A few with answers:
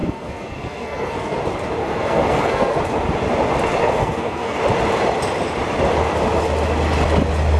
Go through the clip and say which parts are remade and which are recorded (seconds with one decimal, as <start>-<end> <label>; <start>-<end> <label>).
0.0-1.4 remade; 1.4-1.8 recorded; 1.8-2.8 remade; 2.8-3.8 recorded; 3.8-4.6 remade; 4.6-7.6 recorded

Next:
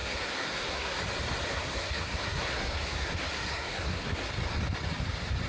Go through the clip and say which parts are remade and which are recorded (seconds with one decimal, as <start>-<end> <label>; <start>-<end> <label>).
0.0-1.0 remade; 1.0-1.5 recorded; 1.5-4.3 remade; 4.3-5.5 recorded

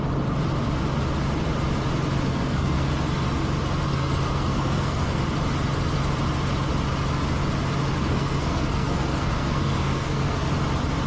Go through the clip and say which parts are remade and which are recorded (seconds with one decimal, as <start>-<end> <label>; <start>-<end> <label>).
0.0-2.3 recorded; 2.3-2.9 remade; 2.9-3.9 recorded; 3.9-5.2 remade; 5.2-8.0 recorded; 8.0-10.5 remade; 10.5-11.1 recorded

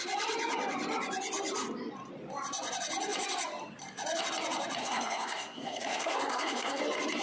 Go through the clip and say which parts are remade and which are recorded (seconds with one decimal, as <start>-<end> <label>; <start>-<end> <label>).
0.0-4.8 recorded; 4.8-6.8 remade; 6.8-7.2 recorded

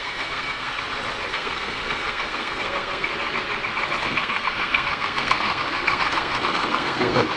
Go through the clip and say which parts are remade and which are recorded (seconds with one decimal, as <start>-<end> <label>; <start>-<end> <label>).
0.0-0.7 remade; 0.7-1.3 recorded; 1.3-3.1 remade; 3.1-4.0 recorded; 4.0-7.4 remade

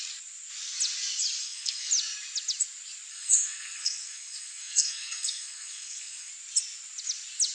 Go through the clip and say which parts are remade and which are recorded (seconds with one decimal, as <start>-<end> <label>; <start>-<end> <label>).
0.0-1.4 recorded; 1.4-1.9 remade; 1.9-3.1 recorded; 3.1-6.3 remade; 6.3-7.5 recorded

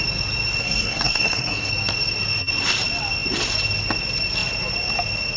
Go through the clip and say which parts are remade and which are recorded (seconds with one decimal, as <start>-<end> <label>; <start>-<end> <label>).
0.0-0.6 recorded; 0.6-1.7 remade; 1.7-5.4 recorded

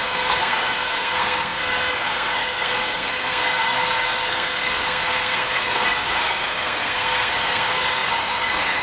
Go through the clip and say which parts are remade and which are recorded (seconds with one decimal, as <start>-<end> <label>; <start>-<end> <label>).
0.0-8.8 remade